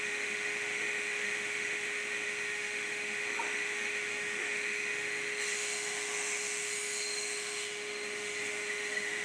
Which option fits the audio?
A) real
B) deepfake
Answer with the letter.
B